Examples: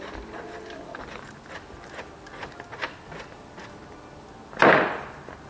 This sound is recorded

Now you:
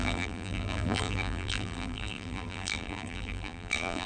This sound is remade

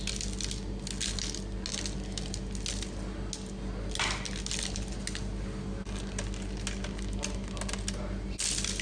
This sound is recorded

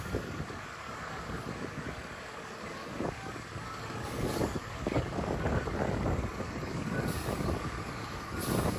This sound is remade